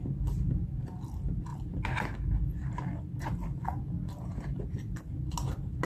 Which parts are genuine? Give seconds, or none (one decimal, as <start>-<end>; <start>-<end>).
0.0-5.8